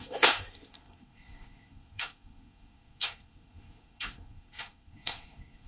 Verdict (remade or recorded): remade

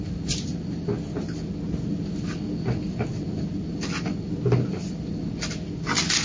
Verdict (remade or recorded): recorded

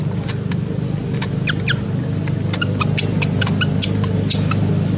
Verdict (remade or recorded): recorded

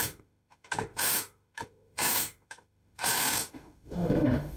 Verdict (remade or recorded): remade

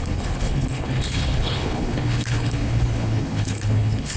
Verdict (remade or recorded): remade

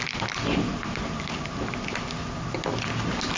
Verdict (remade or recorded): recorded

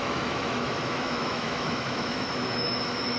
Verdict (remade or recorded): remade